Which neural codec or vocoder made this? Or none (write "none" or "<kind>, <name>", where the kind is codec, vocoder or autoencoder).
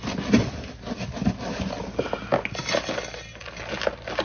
none